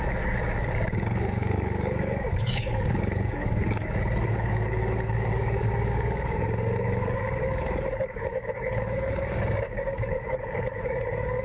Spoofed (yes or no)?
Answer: yes